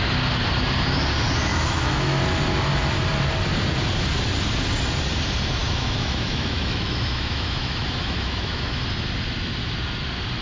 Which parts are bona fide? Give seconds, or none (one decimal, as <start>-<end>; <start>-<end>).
0.0-1.5; 2.2-5.6; 8.8-10.4